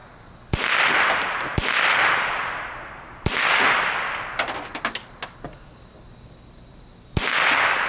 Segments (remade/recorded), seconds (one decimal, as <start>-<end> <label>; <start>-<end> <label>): 0.0-7.9 recorded

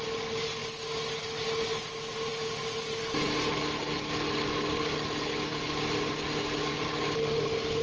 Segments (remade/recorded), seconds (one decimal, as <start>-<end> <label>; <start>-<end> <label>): 0.0-7.8 recorded

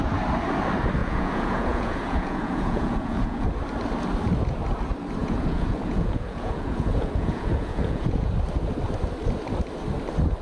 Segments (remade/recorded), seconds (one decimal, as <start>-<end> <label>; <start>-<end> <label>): 0.0-1.0 recorded; 1.0-3.5 remade; 3.5-5.2 recorded; 5.2-8.3 remade; 8.3-10.4 recorded

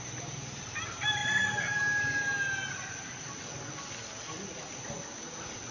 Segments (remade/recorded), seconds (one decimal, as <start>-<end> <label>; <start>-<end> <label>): 0.0-5.7 recorded